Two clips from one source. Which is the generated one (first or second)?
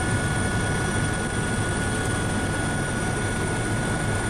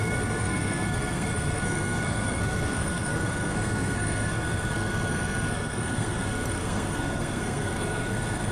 second